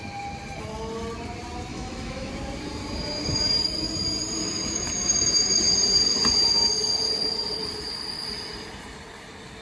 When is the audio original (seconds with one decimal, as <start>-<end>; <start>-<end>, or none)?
0.0-1.7; 2.3-4.4; 5.6-9.6